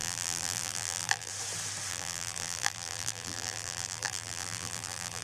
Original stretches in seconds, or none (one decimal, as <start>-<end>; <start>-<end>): 1.3-1.9